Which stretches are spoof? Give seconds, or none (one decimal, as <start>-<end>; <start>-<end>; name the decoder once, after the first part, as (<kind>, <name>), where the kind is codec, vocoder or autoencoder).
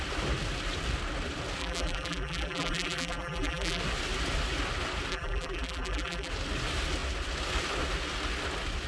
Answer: 1.6-3.8 (vocoder, BigVGAN v2); 5.1-6.3